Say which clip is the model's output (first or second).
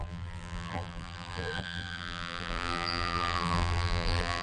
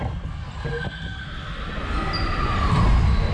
first